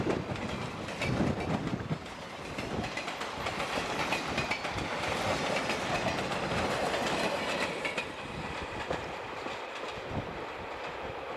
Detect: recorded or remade recorded